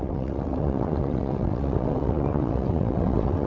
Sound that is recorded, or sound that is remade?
remade